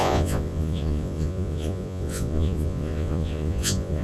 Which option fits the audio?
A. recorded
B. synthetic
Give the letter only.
B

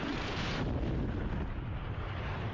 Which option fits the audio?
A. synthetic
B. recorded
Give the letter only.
B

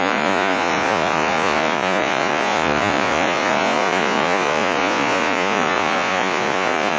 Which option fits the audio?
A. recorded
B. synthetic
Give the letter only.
B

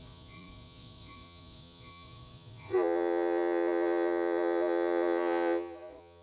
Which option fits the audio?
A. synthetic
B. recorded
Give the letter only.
A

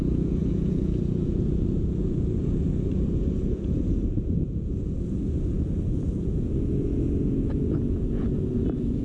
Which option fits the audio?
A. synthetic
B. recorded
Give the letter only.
A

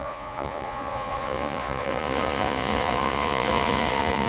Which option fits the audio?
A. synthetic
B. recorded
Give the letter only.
A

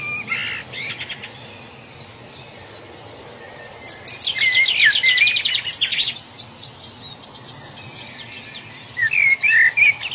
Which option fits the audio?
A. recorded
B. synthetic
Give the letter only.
A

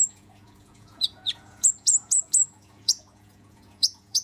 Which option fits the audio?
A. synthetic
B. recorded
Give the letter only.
A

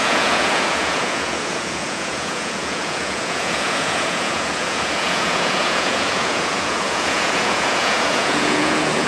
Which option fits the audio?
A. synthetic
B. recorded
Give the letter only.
A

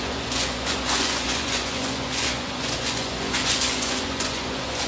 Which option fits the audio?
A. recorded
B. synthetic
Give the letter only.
B